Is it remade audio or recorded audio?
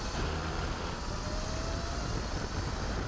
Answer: recorded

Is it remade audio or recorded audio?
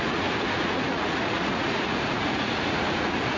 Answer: remade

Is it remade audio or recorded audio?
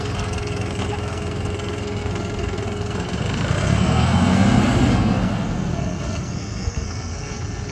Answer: remade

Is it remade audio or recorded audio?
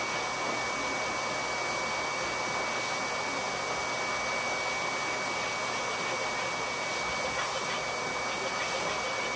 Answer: recorded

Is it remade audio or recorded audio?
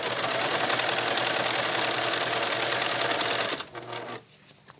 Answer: recorded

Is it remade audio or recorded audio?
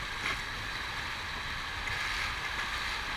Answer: recorded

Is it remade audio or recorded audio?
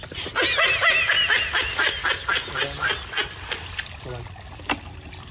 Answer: recorded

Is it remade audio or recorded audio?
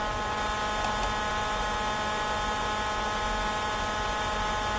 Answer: recorded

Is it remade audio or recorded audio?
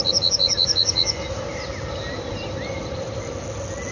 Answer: recorded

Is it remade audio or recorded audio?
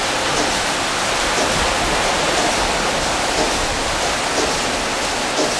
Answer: recorded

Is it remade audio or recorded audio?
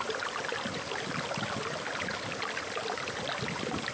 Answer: recorded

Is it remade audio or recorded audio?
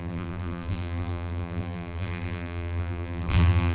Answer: remade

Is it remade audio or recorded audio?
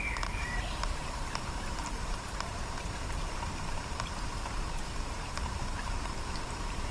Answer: remade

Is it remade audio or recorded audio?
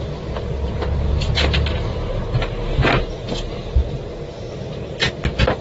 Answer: recorded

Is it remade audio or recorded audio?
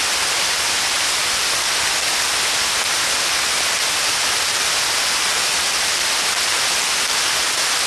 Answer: recorded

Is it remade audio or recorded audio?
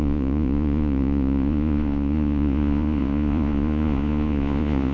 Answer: remade